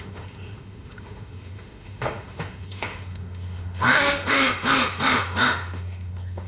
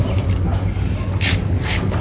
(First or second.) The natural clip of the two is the second